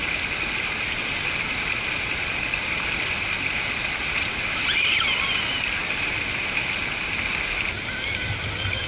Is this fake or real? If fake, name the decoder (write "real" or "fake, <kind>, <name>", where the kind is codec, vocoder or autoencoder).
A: real